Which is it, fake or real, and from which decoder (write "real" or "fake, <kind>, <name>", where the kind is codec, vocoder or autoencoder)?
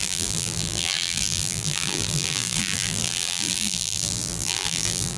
fake, vocoder, BigVGAN v2